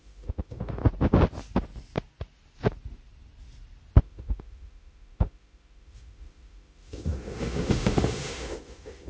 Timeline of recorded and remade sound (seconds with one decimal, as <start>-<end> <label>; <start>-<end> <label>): 0.0-0.8 remade; 0.8-4.0 recorded; 4.0-9.1 remade